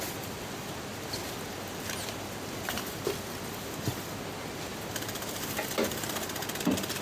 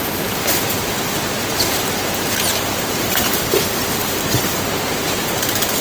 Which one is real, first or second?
first